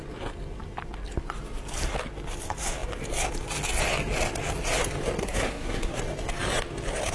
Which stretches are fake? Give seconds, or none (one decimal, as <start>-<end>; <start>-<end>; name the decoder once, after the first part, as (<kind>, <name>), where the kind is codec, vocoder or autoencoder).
5.2-6.0 (codec, SNAC)